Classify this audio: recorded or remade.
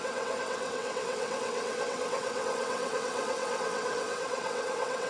remade